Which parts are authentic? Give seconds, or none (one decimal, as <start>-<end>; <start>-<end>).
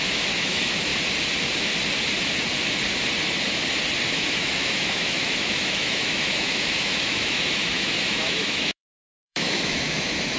0.9-4.1